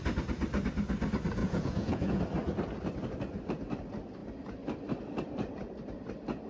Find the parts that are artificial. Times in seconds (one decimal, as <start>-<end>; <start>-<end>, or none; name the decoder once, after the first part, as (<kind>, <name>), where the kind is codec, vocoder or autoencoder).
1.4-2.2 (vocoder, Vocos)